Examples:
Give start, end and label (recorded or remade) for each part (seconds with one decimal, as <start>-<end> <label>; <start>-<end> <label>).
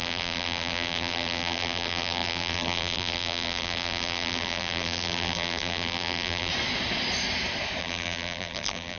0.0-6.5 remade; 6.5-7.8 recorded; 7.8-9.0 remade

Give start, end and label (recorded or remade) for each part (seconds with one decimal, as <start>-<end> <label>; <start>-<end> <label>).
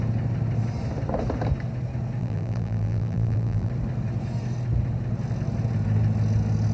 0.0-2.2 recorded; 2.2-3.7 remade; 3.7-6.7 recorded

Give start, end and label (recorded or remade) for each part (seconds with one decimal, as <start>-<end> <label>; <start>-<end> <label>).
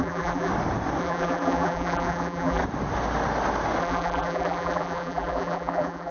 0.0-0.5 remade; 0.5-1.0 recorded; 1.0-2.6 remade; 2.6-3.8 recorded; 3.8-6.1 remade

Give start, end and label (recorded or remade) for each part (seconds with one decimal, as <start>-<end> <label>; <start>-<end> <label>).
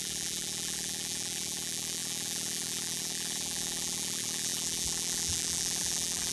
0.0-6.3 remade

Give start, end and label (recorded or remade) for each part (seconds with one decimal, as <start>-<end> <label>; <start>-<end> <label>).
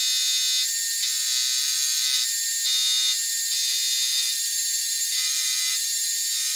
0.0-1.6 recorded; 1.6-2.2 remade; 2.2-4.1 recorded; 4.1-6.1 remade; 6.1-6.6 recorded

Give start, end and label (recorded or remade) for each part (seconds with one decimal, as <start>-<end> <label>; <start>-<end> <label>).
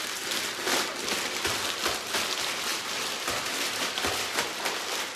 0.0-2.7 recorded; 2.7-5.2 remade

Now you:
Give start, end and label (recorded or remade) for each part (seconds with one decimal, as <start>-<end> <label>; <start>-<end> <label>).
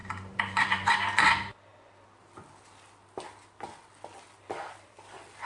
0.0-0.9 remade; 0.9-5.5 recorded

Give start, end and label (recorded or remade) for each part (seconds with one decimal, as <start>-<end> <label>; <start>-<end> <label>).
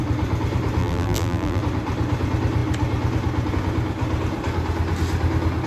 0.0-0.8 recorded; 0.8-1.6 remade; 1.6-5.7 recorded